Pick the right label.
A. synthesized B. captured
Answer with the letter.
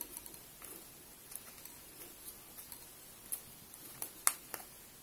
B